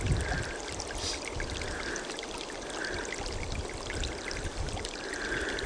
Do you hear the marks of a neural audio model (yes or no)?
no